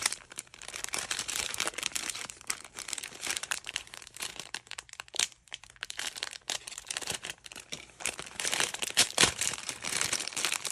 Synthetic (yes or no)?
yes